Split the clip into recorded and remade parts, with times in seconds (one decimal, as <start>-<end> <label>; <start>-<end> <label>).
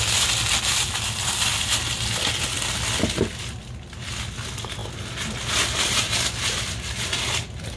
0.0-7.8 recorded